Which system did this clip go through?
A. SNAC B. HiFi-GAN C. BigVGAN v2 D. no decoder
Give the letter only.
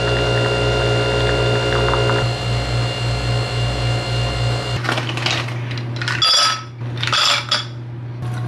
D